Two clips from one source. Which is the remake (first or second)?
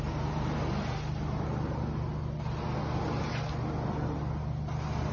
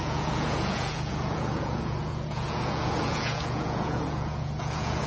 second